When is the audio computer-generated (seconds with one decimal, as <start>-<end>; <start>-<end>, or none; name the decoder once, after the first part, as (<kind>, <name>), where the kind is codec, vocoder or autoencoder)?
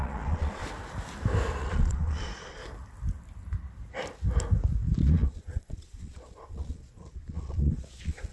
0.0-0.6 (vocoder, Vocos); 1.6-2.6; 5.0-8.3